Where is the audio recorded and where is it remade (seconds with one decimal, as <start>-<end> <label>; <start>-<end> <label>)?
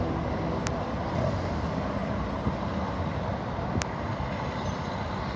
0.0-2.0 recorded; 2.0-2.7 remade; 2.7-3.3 recorded; 3.3-4.2 remade; 4.2-5.4 recorded